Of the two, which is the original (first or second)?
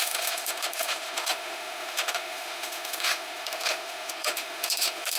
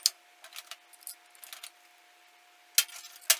second